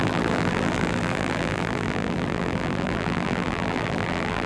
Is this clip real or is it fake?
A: fake